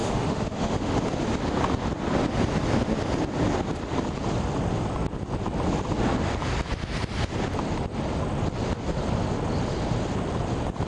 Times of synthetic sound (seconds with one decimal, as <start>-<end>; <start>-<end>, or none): 0.0-1.0